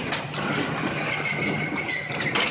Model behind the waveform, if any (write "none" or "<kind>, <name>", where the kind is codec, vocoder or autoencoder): none